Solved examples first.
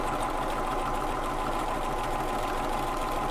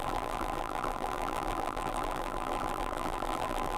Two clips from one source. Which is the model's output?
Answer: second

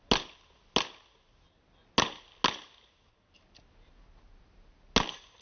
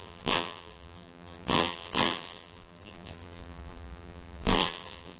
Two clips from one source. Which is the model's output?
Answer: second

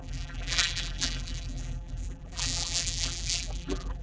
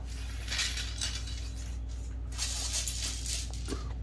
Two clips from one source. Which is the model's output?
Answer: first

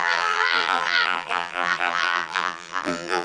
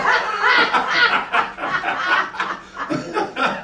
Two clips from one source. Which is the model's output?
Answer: first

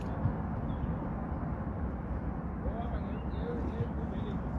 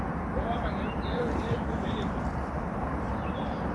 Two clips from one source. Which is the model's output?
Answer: second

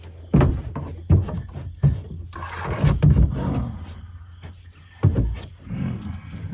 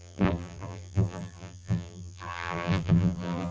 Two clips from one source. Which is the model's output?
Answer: second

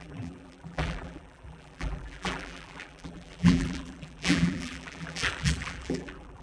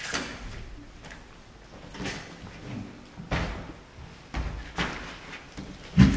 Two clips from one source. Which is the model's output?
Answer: first